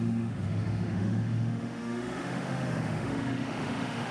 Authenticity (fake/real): fake